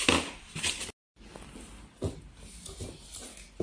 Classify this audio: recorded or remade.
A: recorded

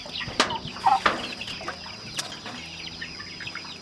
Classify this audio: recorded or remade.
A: recorded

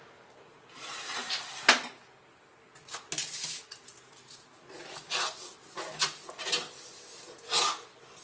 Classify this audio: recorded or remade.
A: recorded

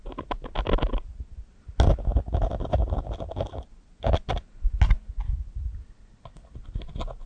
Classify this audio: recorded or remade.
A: recorded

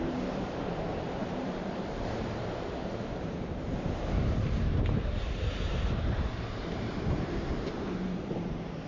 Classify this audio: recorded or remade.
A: remade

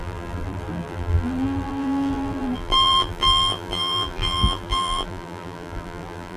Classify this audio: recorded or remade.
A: remade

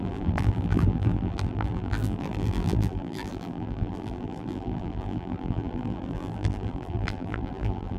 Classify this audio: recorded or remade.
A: remade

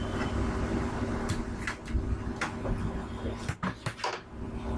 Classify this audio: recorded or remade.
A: recorded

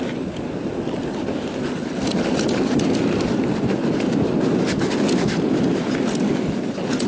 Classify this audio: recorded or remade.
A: recorded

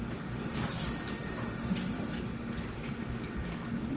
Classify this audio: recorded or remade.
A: recorded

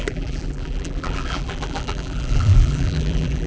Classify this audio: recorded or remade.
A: remade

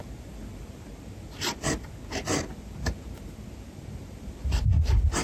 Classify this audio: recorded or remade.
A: recorded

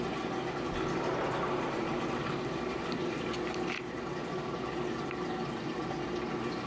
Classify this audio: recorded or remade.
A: recorded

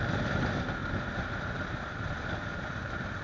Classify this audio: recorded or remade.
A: remade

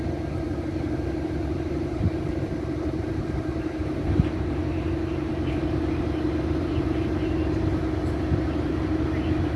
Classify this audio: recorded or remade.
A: remade